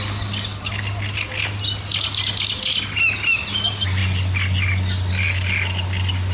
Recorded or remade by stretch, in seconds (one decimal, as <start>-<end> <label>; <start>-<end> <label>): 0.0-6.3 recorded